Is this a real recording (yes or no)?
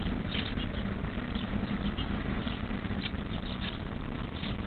no